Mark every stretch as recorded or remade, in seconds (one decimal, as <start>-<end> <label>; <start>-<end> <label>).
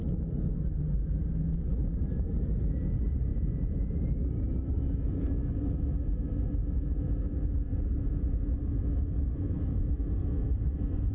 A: 0.0-3.3 recorded; 3.3-4.1 remade; 4.1-7.7 recorded; 7.7-8.5 remade; 8.5-11.1 recorded